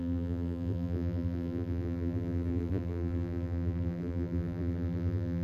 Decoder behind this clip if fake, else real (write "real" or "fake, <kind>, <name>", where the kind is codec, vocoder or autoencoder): fake, vocoder, BigVGAN v2